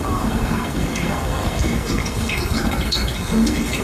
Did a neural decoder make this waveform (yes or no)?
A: yes